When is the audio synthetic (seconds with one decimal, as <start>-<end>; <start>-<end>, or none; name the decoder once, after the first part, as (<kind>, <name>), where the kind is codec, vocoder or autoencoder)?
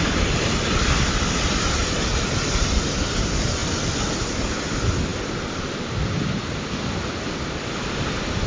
none